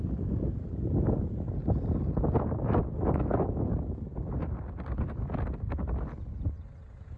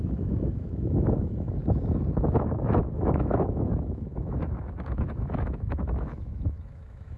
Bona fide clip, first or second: first